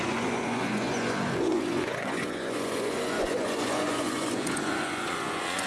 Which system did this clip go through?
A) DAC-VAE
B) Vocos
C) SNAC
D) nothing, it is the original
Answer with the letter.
B